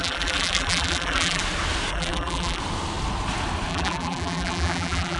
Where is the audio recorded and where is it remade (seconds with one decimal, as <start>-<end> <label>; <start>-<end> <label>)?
0.0-1.4 remade; 1.4-1.9 recorded; 1.9-2.6 remade; 2.6-3.7 recorded; 3.7-5.2 remade